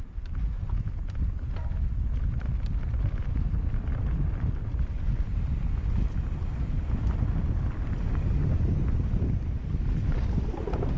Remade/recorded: recorded